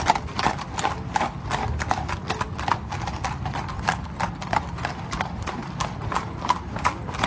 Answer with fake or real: real